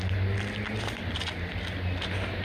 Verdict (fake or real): real